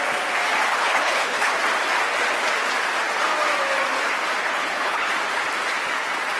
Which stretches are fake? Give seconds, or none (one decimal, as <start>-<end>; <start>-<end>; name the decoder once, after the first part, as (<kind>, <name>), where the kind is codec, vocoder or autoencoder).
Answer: 0.7-1.5 (codec, HILCodec); 4.5-5.1